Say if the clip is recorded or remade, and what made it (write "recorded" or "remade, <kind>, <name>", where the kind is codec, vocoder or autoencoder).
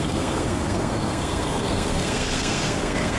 remade, codec, SNAC